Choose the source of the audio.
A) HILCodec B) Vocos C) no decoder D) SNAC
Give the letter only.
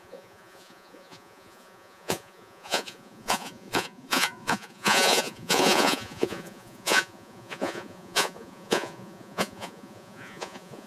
B